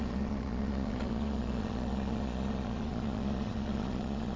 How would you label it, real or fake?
fake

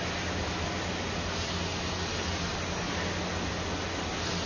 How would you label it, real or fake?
real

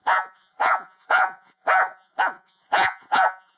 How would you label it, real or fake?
fake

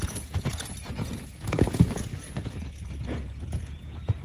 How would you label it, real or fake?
fake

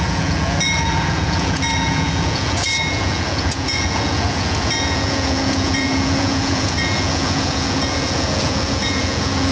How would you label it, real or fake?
fake